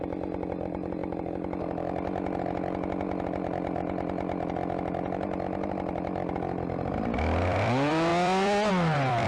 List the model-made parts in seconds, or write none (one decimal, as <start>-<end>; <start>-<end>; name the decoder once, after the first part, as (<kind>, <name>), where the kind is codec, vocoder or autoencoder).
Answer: 0.0-1.0 (vocoder, BigVGAN v2); 5.7-9.3